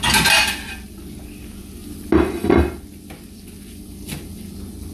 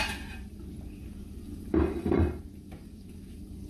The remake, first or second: second